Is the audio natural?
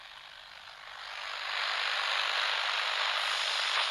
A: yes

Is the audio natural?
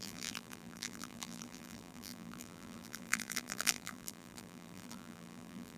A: no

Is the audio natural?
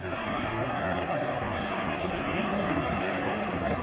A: no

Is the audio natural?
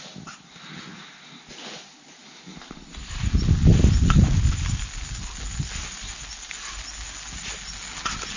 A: yes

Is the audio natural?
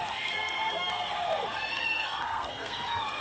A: no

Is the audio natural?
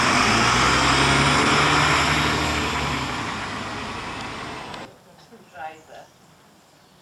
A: yes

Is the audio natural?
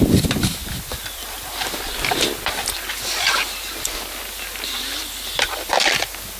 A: yes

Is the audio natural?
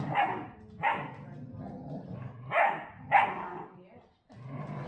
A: yes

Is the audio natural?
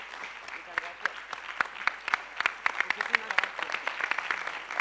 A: yes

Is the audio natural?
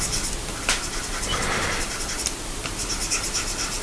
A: yes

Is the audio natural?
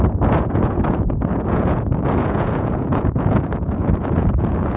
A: no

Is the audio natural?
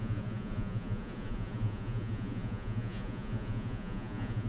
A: no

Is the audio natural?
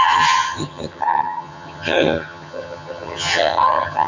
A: no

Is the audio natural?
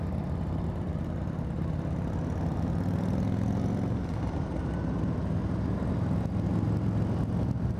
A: yes